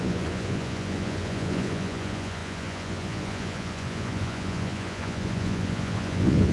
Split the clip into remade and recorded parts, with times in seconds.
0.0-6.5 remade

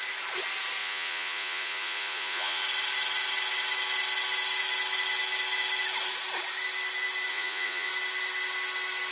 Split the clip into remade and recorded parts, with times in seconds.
0.0-0.8 recorded; 0.8-2.6 remade; 2.6-7.3 recorded; 7.3-7.9 remade; 7.9-9.1 recorded

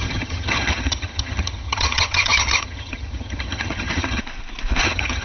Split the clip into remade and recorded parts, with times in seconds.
0.0-4.2 remade; 4.2-4.8 recorded; 4.8-5.2 remade